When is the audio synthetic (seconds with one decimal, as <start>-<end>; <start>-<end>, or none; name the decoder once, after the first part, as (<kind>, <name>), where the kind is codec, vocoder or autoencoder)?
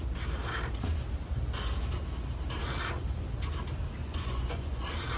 4.0-4.8 (vocoder, Vocos)